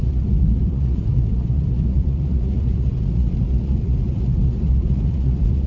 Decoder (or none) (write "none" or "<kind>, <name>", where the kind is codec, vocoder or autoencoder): vocoder, Vocos